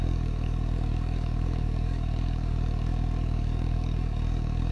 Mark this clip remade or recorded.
remade